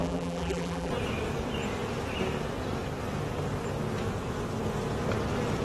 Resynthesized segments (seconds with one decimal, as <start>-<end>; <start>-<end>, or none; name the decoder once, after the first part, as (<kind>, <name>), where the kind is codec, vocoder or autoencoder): 0.0-0.9 (vocoder, BigVGAN v2)